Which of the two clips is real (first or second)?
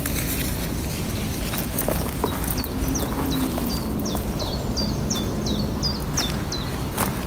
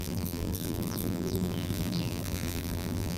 first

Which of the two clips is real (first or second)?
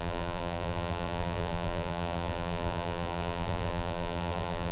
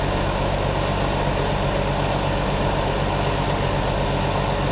second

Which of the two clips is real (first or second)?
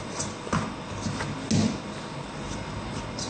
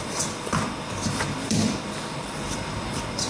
first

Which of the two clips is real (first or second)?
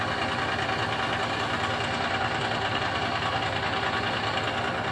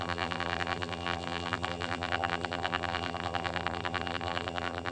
first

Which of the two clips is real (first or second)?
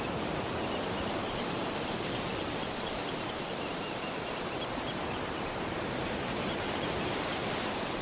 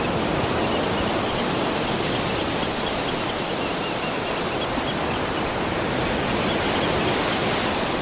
second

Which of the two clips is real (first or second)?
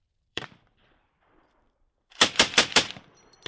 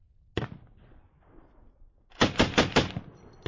second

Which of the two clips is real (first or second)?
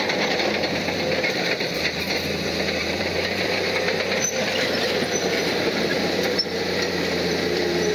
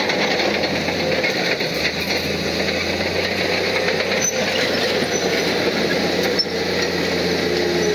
second